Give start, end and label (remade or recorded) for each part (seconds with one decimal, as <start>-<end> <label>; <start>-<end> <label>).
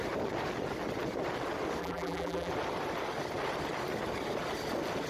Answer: 0.0-1.8 recorded; 1.8-2.5 remade; 2.5-5.1 recorded